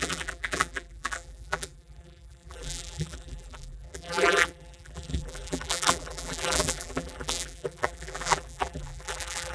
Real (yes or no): no